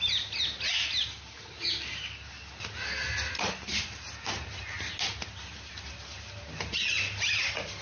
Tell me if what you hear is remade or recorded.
recorded